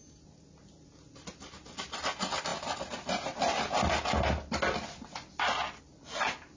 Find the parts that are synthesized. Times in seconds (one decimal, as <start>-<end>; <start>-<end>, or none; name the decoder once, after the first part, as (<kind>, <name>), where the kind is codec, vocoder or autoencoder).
none